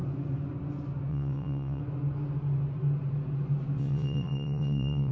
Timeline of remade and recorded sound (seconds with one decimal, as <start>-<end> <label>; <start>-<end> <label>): 0.0-1.1 recorded; 1.1-1.8 remade; 1.8-3.8 recorded; 3.8-5.1 remade